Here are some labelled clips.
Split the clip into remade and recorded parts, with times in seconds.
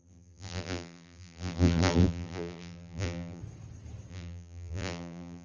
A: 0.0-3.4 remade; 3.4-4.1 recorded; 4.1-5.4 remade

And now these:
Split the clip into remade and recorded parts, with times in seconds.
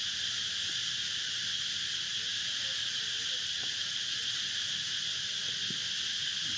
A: 0.0-6.6 recorded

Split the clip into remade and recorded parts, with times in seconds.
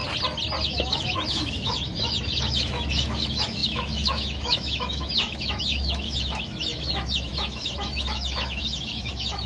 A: 0.0-0.6 recorded; 0.6-9.5 remade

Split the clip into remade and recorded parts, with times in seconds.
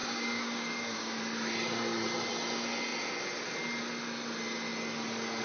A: 0.0-1.2 remade; 1.2-5.4 recorded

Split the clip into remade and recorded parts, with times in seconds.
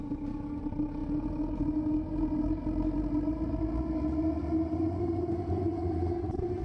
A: 0.0-6.6 recorded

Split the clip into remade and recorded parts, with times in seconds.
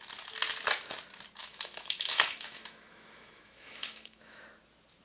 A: 0.0-1.4 recorded; 1.4-4.4 remade; 4.4-5.0 recorded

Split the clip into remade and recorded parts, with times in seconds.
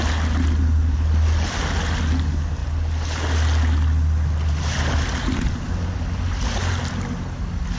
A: 0.0-7.8 recorded